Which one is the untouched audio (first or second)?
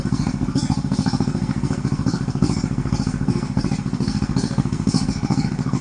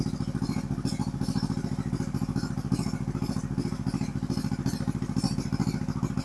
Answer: second